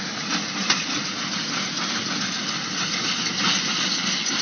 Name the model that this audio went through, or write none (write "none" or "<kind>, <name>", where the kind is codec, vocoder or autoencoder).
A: none